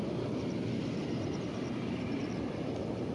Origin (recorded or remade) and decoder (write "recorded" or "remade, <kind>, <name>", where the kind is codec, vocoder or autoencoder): recorded